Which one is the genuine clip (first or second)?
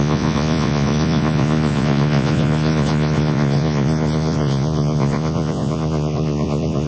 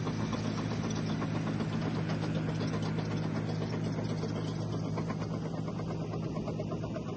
second